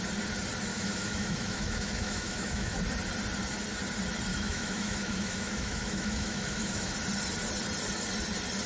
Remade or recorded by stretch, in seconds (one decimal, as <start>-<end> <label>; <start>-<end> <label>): 0.0-0.7 recorded; 0.7-2.8 remade; 2.8-4.3 recorded; 4.3-6.9 remade; 6.9-8.7 recorded